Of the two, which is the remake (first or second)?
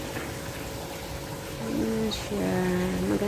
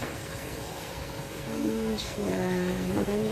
second